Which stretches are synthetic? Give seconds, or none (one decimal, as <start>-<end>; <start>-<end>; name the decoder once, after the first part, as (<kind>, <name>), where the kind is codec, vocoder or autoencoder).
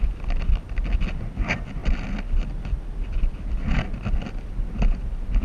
none